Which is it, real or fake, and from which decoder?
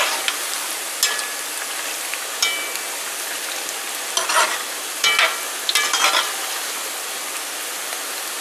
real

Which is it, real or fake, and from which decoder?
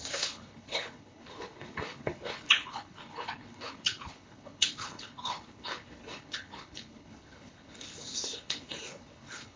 fake, codec, HILCodec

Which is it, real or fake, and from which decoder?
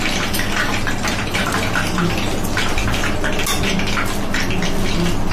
real